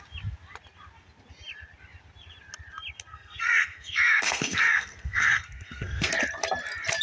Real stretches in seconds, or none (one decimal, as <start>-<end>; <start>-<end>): 0.0-3.1; 6.1-7.0